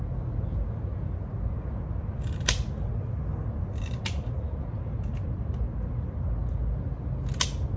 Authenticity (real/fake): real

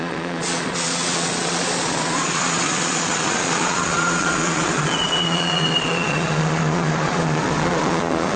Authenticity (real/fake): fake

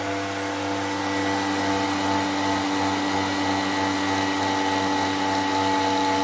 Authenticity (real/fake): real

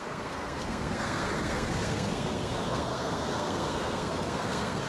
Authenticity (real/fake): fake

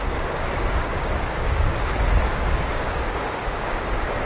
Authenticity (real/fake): fake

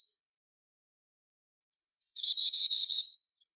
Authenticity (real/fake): fake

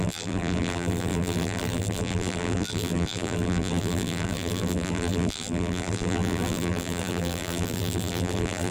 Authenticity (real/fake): fake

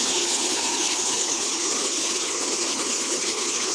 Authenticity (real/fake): fake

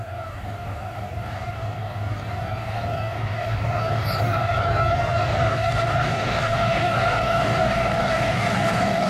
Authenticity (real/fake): fake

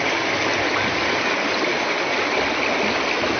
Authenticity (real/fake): real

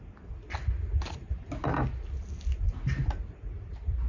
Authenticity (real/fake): real